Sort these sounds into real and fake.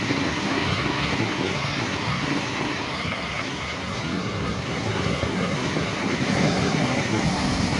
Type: fake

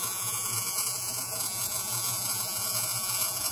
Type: fake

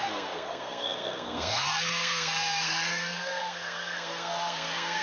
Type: fake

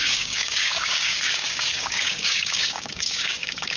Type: fake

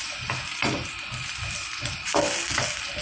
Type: real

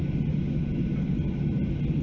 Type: real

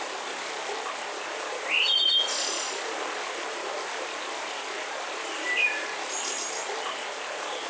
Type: real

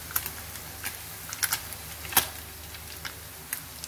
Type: real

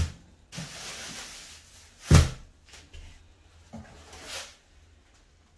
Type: real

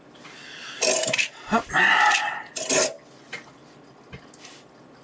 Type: real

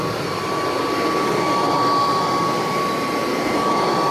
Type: real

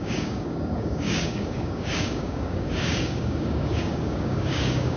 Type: fake